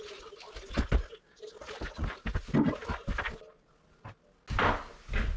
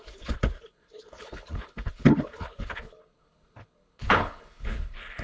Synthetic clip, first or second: second